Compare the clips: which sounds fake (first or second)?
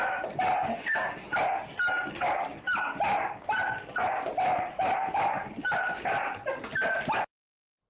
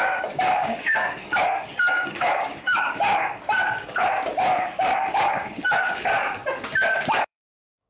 second